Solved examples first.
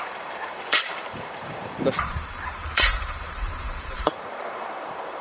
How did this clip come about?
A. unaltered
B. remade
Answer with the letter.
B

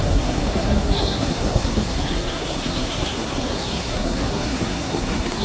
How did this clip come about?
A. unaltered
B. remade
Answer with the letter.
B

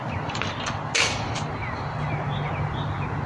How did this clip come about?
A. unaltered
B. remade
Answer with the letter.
A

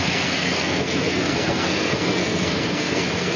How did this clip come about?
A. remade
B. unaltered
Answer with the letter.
A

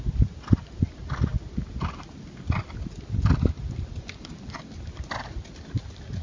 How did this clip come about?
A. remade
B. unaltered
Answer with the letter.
B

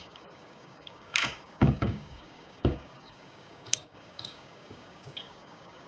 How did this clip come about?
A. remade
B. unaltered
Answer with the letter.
A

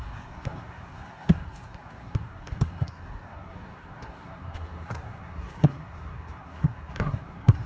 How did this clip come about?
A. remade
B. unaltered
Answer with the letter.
A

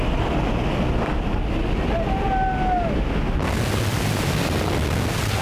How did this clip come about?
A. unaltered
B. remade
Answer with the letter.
A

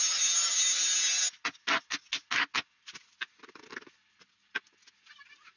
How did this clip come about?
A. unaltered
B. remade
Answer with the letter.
A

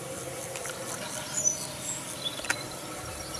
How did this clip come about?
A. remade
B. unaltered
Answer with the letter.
B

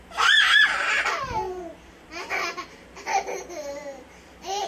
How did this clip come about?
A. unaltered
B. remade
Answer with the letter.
A